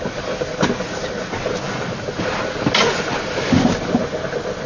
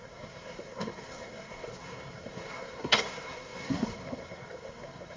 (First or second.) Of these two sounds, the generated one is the second